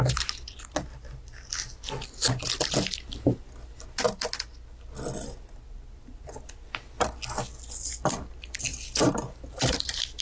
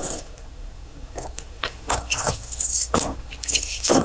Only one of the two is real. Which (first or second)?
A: first